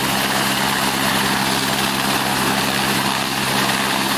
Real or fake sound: real